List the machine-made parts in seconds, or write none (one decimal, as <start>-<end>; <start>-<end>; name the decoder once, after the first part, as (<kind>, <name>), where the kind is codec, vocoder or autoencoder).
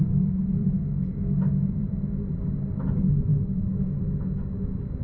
none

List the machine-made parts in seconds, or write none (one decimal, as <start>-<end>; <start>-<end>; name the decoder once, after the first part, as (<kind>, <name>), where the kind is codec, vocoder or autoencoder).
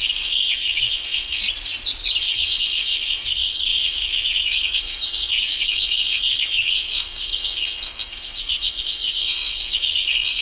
0.0-1.4 (codec, SNAC); 2.2-10.4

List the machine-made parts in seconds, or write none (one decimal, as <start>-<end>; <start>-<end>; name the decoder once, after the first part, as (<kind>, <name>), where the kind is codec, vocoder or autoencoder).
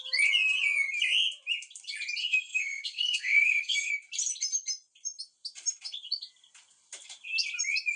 2.2-3.9 (codec, SNAC)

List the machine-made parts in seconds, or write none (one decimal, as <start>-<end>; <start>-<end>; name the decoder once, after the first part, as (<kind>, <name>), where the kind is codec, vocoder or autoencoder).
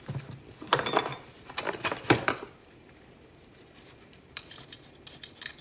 1.1-4.5 (vocoder, BigVGAN v2)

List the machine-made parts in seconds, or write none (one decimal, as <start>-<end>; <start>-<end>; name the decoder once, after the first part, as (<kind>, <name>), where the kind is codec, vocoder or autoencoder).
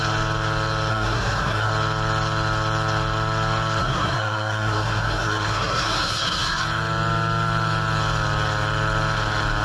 0.9-1.7 (codec, SNAC); 3.8-6.6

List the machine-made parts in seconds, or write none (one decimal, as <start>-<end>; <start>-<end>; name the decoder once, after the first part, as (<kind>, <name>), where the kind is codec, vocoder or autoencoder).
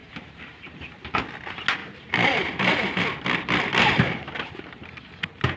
0.0-0.9 (vocoder, BigVGAN v2); 1.8-3.0; 3.8-5.1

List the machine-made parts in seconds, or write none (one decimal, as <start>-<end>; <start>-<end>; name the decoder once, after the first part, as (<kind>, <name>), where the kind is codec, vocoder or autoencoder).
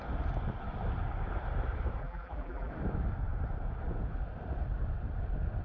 2.0-2.7 (vocoder, BigVGAN v2)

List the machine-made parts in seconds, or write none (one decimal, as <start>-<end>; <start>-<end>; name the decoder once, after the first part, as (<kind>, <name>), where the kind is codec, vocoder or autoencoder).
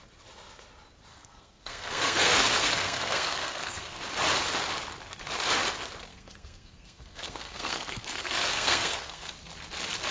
1.1-4.0 (codec, SNAC); 6.1-9.3